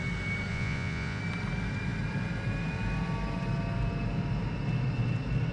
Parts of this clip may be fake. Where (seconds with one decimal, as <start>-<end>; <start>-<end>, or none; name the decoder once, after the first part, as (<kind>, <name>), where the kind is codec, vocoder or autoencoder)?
0.5-1.2 (vocoder, Vocos)